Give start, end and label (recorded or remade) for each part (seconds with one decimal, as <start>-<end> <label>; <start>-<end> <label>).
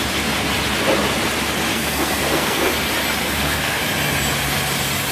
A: 0.0-1.7 recorded; 1.7-2.7 remade; 2.7-3.2 recorded; 3.2-3.8 remade; 3.8-5.1 recorded